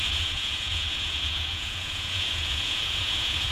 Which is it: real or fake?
fake